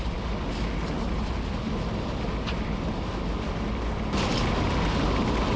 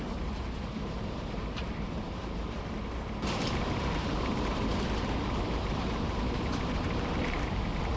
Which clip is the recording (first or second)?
first